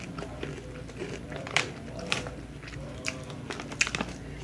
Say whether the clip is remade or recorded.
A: remade